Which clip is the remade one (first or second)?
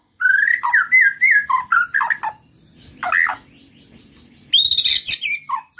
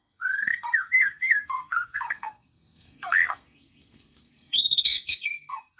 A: second